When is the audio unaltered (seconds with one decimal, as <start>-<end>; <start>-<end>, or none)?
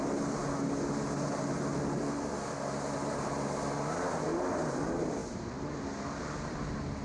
0.0-7.0